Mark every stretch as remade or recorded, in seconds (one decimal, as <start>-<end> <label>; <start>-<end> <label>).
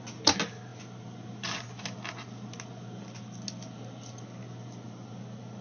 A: 0.0-5.6 recorded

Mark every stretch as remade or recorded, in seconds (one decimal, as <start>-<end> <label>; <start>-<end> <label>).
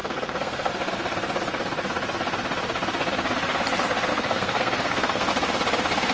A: 0.0-0.7 remade; 0.7-4.1 recorded; 4.1-5.3 remade; 5.3-6.1 recorded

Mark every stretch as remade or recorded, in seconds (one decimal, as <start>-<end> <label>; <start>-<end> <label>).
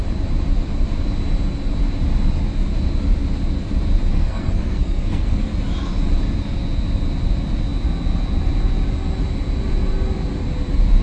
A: 0.0-4.1 recorded; 4.1-5.5 remade; 5.5-11.0 recorded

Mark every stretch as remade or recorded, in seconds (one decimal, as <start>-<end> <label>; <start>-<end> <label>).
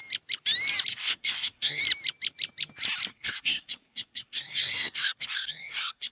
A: 0.0-0.9 recorded; 0.9-1.8 remade; 1.8-3.1 recorded; 3.1-6.1 remade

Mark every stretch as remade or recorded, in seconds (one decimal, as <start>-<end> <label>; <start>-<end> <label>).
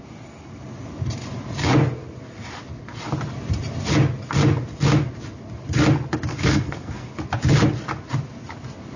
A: 0.0-6.3 recorded; 6.3-7.1 remade; 7.1-9.0 recorded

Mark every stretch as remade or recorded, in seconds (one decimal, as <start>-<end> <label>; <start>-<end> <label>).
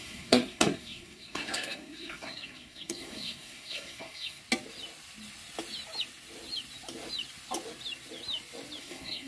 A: 0.0-4.4 remade; 4.4-8.8 recorded; 8.8-9.3 remade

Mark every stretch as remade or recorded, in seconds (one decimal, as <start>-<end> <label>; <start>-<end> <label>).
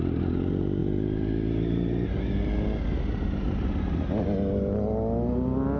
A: 0.0-5.8 recorded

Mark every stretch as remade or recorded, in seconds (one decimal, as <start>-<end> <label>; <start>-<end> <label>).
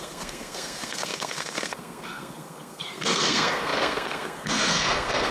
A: 0.0-5.3 remade